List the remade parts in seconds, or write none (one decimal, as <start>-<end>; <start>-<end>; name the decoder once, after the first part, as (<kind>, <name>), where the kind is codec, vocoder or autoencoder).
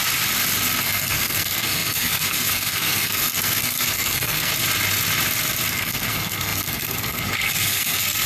0.8-4.5 (codec, SNAC); 5.7-8.3